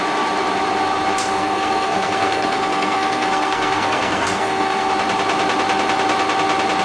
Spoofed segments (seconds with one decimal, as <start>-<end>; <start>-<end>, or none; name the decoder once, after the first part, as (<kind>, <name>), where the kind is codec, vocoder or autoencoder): 1.2-4.9 (codec, SNAC)